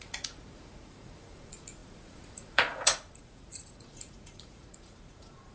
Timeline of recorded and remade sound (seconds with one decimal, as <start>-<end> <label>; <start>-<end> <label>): 0.0-5.5 remade